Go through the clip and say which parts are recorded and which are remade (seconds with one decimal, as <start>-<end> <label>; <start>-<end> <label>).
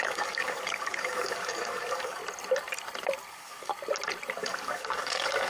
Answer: 0.0-2.2 remade; 2.2-3.3 recorded; 3.3-3.7 remade; 3.7-4.4 recorded; 4.4-5.5 remade